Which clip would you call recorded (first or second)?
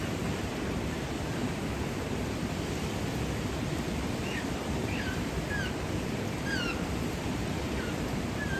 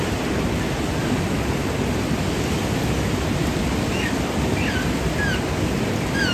second